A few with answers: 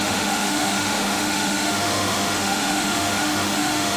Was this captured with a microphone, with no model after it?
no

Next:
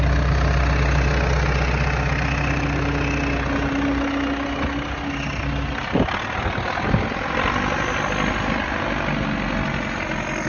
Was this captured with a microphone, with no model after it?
yes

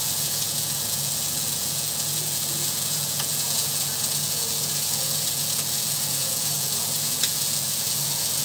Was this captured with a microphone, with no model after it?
no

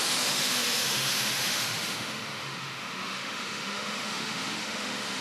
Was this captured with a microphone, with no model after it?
no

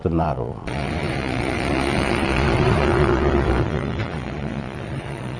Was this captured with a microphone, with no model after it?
no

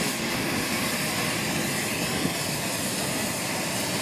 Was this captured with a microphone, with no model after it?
yes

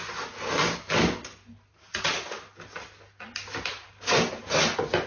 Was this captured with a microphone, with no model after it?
yes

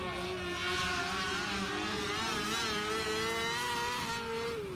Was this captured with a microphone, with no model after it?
yes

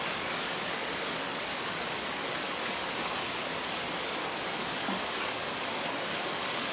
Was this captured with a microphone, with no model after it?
no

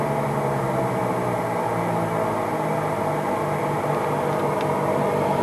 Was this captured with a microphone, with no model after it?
yes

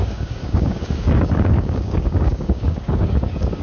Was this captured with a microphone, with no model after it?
no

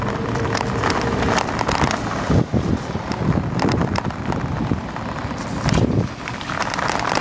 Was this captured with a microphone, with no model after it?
no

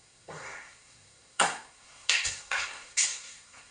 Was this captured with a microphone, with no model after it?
no